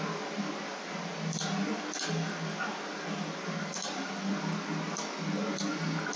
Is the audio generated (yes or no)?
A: no